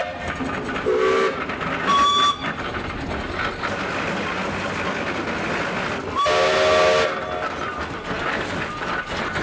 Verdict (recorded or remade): recorded